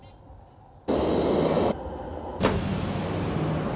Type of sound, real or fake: real